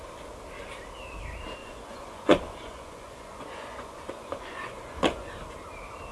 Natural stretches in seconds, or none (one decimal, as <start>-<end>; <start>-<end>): 0.0-1.6; 5.3-6.1